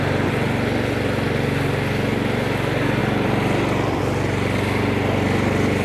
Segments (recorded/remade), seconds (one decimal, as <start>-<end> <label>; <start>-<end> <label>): 0.0-3.0 recorded; 3.0-4.0 remade; 4.0-5.8 recorded